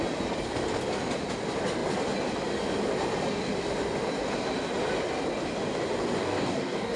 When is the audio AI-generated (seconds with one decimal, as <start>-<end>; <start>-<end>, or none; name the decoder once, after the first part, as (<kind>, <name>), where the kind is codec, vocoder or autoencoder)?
6.2-7.0 (codec, DAC)